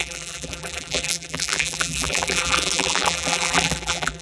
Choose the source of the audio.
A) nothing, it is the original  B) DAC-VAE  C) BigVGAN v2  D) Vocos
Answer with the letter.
C